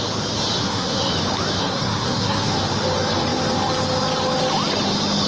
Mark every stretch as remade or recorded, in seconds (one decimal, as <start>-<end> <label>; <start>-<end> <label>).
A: 0.0-0.6 recorded; 0.6-1.1 remade; 1.1-1.6 recorded; 1.6-2.5 remade; 2.5-5.3 recorded